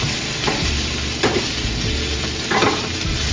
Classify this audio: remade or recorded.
recorded